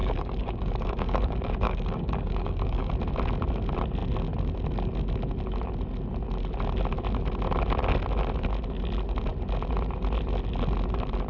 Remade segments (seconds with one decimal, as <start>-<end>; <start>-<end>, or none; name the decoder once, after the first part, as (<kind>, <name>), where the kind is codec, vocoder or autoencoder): 0.0-2.9 (codec, DAC)